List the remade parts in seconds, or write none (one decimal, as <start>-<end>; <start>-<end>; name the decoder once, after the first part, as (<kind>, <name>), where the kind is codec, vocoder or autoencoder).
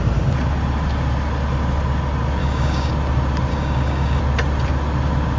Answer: 2.4-2.9 (codec, DAC); 3.5-4.2